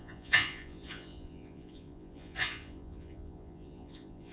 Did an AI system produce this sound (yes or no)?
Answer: yes